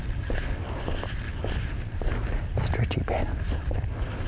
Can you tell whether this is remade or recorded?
recorded